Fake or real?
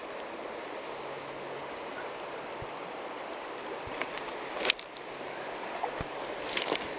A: real